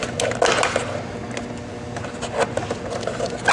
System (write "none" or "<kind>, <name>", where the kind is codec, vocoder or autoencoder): none